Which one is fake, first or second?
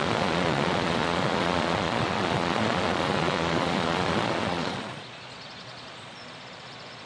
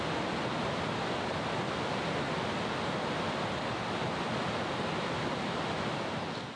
first